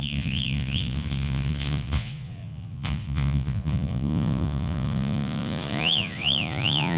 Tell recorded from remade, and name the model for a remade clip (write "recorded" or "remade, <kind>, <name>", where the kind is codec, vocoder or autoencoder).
remade, vocoder, Vocos